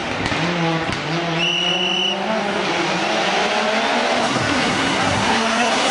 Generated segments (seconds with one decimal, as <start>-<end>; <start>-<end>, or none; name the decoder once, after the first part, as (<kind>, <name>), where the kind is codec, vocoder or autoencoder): 4.2-5.9 (codec, SNAC)